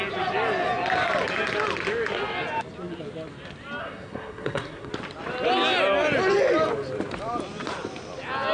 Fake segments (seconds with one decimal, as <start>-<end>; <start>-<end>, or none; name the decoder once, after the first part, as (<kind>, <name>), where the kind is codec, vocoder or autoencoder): 3.8-4.9 (codec, SNAC)